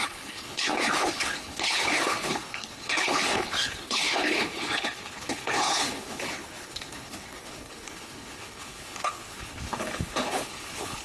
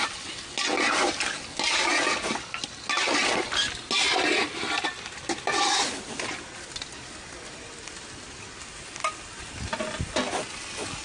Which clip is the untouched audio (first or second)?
second